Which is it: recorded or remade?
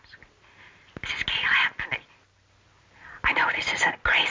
recorded